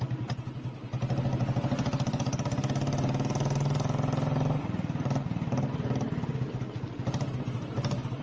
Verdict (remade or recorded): recorded